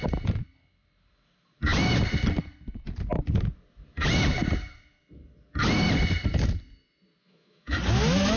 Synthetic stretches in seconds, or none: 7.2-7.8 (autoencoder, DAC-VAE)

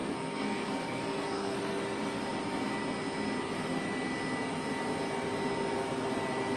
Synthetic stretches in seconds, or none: 0.0-1.8 (codec, SNAC)

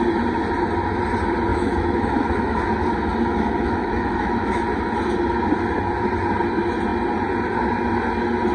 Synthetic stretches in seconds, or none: 1.5-2.6 (autoencoder, DAC-VAE); 3.3-4.6